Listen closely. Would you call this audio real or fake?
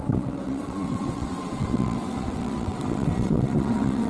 fake